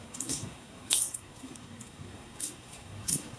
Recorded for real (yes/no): no